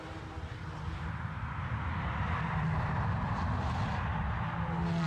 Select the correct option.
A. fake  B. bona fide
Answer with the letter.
A